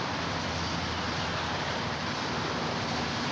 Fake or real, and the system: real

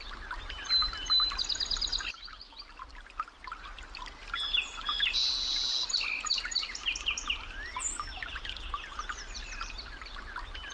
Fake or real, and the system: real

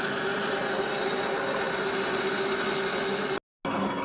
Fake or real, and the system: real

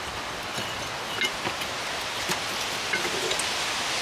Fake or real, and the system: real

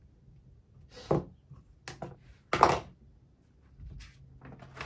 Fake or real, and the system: real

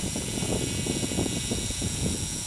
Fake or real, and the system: fake, vocoder, Vocos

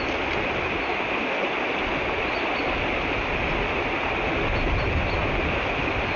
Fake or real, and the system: real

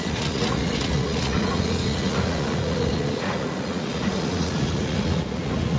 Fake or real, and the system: fake, vocoder, Vocos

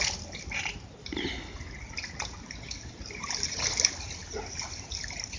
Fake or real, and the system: real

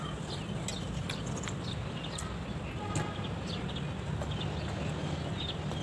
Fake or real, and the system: real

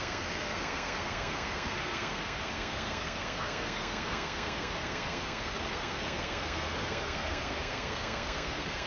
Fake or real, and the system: fake, codec, SNAC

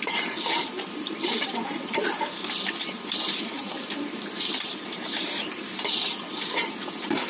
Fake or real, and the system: fake, vocoder, BigVGAN v2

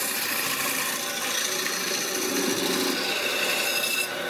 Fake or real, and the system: real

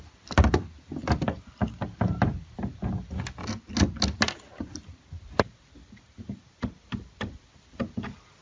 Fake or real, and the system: real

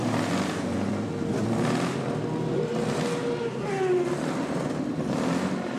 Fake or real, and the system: real